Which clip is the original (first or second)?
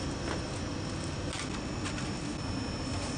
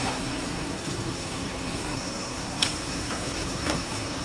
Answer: first